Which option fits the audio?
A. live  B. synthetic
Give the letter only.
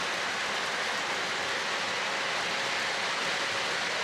A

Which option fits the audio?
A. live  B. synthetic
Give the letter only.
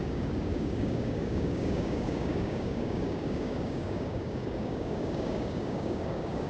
B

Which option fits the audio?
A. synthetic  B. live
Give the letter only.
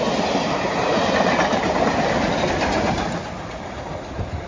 B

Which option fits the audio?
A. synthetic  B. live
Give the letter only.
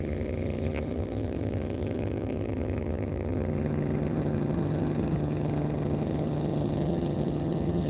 A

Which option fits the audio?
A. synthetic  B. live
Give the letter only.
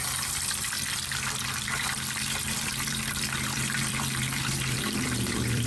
A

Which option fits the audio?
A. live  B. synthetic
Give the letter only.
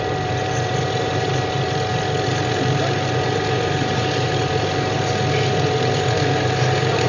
B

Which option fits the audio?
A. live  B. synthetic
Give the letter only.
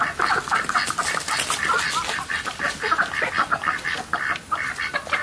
A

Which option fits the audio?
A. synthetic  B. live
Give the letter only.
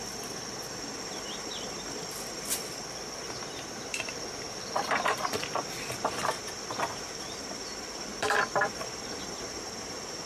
A